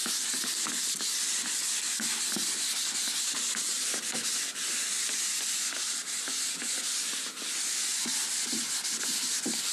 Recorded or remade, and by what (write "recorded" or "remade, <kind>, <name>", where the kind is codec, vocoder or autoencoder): recorded